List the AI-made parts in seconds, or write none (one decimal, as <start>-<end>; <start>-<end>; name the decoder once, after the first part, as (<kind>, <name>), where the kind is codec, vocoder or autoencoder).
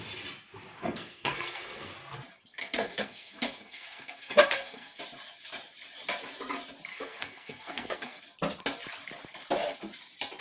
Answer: 0.8-1.9 (codec, SNAC); 2.6-5.0; 6.9-8.2